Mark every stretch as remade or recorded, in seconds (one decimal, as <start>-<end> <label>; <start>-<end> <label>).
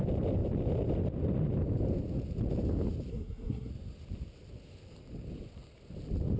0.0-3.1 recorded; 3.1-3.7 remade; 3.7-6.4 recorded